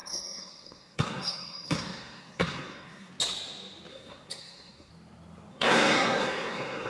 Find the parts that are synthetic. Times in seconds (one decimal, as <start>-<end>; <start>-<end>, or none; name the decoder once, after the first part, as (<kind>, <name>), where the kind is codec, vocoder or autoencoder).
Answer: 0.0-3.1 (codec, SNAC); 3.9-4.9; 5.5-6.9